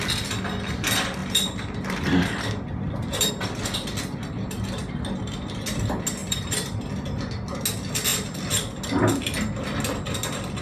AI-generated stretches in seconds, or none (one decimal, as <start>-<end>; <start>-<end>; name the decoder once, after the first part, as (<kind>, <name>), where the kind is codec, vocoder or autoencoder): 1.2-3.3 (vocoder, BigVGAN v2); 6.2-6.8; 8.1-8.8